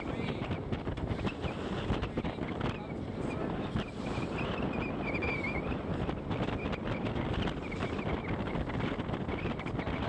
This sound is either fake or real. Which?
real